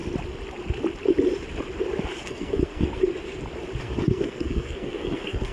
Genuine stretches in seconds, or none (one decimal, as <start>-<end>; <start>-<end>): 0.0-2.2; 3.1-3.8